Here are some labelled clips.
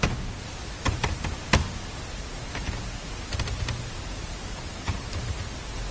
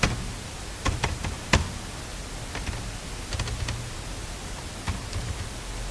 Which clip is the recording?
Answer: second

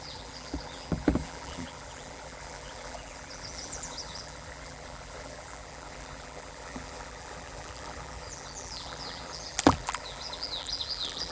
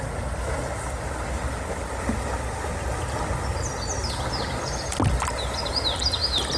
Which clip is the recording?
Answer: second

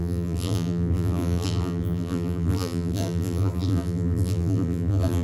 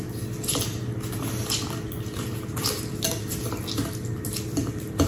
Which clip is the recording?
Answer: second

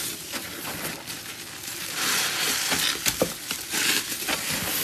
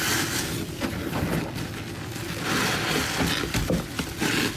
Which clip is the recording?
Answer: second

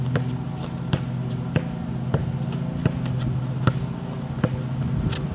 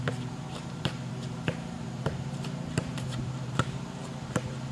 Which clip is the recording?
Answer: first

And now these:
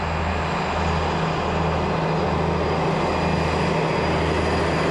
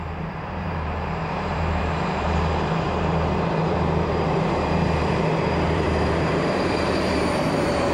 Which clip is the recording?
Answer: first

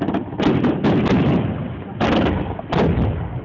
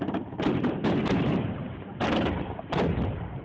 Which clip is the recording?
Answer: first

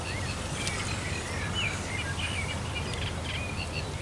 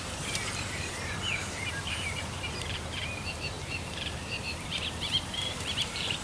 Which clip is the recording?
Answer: first